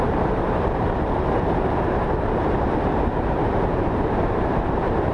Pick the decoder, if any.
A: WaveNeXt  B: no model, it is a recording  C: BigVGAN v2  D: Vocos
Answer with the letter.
C